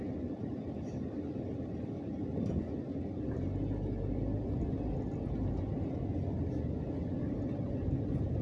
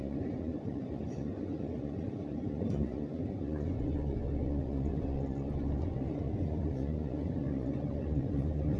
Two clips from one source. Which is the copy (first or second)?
second